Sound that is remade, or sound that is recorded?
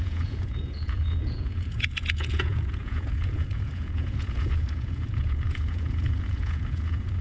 remade